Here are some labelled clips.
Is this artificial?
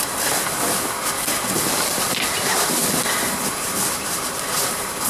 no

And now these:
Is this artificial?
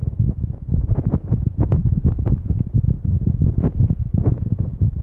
yes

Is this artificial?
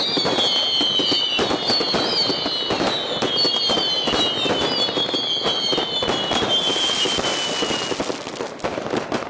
no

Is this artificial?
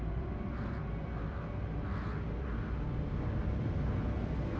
no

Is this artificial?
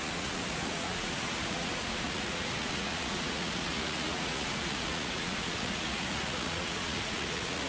yes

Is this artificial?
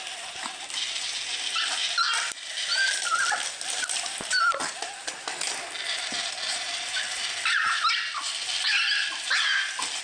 no